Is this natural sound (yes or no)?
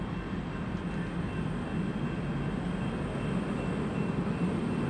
yes